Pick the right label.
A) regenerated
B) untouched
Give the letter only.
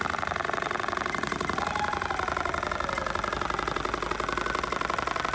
B